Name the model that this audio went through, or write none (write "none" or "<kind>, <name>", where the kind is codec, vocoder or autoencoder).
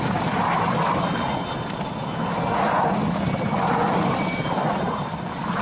none